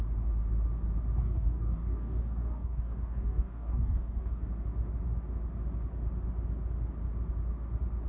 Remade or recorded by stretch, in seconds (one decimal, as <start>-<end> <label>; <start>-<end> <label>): 0.0-1.2 recorded; 1.2-4.5 remade; 4.5-8.1 recorded